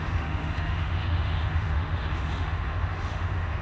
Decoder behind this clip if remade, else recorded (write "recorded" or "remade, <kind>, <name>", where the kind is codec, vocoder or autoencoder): remade, autoencoder, DAC-VAE